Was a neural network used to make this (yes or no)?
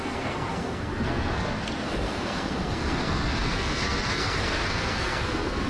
yes